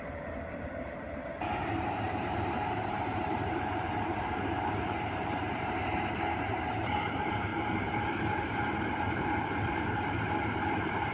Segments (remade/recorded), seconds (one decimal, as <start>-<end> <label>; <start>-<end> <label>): 0.0-11.1 remade